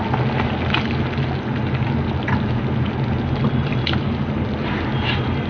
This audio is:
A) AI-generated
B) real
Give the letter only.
B